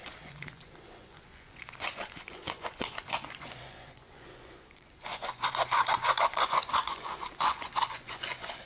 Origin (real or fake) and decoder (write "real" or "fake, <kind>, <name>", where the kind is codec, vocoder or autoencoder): fake, vocoder, Vocos